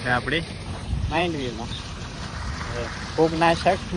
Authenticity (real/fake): fake